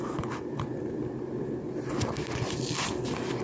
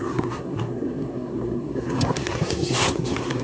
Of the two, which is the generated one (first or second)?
second